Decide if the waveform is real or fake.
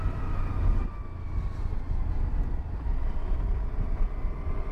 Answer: real